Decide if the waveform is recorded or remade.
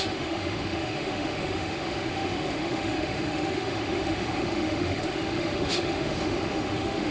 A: remade